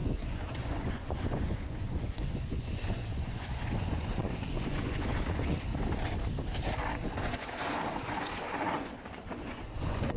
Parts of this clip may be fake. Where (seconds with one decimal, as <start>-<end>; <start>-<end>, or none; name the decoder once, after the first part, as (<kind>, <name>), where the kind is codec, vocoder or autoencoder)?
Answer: 0.0-5.7 (vocoder, Vocos); 7.2-10.2